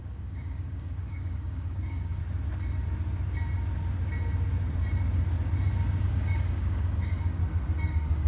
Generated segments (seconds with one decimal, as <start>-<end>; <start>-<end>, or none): 0.0-2.2; 6.0-7.4; 7.9-8.3